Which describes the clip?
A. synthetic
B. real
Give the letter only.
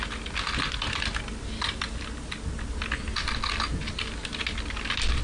B